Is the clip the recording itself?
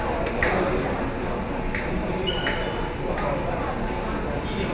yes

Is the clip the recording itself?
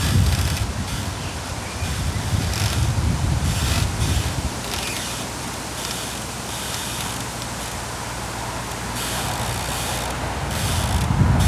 yes